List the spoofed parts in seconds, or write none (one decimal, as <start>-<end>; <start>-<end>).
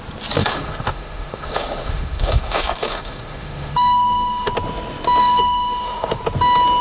0.4-4.5; 5.2-6.2